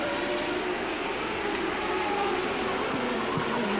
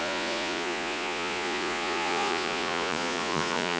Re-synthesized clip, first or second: second